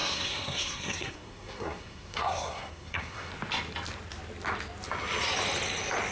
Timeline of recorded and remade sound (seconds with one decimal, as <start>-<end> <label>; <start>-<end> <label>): 0.0-3.3 remade; 3.3-6.1 recorded